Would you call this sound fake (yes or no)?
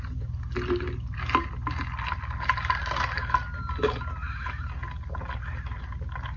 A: no